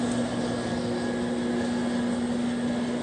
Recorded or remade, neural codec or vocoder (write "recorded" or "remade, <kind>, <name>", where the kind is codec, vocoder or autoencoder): recorded